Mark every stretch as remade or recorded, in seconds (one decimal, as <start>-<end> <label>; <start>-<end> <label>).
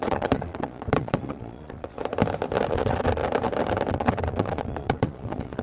0.0-2.0 remade; 2.0-2.7 recorded; 2.7-3.2 remade; 3.2-3.9 recorded; 3.9-5.6 remade